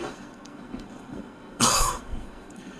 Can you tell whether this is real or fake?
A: fake